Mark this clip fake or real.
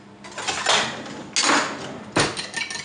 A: real